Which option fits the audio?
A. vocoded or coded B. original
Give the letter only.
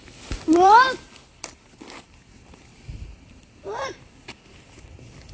A